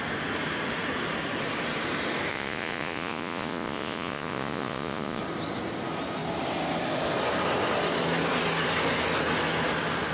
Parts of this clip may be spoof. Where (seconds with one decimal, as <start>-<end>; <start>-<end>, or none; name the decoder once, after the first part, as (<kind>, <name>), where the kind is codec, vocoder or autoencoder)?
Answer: 2.3-5.2 (vocoder, Vocos)